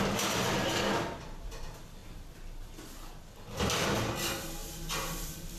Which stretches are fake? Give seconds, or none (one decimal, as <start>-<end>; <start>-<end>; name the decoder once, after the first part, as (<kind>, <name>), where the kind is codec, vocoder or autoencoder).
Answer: 4.6-5.6 (vocoder, BigVGAN v2)